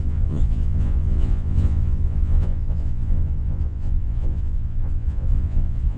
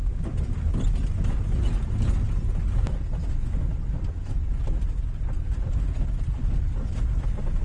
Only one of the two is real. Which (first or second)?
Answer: second